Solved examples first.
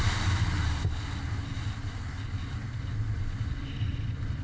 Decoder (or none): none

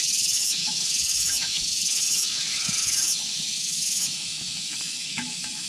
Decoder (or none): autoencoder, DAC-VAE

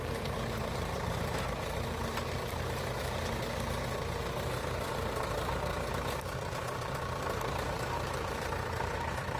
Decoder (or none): vocoder, BigVGAN v2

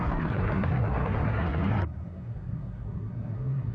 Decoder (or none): codec, SNAC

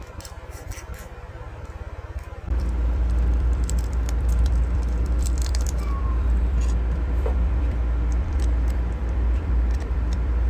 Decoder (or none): vocoder, BigVGAN v2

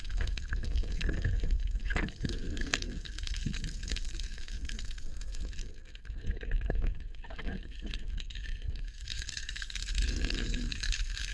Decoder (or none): codec, SNAC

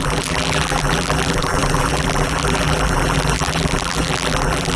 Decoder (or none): vocoder, BigVGAN v2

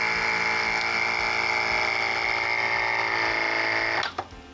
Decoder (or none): none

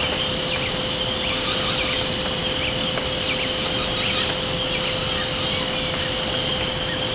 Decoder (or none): none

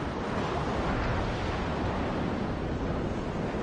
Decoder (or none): none